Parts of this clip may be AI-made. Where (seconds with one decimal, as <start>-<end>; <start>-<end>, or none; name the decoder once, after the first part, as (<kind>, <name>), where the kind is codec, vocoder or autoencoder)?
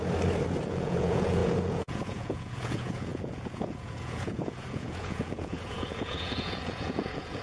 0.7-7.4 (vocoder, Vocos)